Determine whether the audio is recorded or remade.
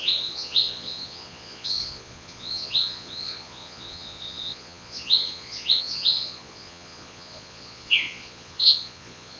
remade